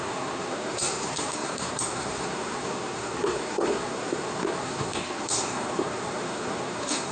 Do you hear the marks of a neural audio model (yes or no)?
yes